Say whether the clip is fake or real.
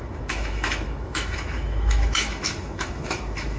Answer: fake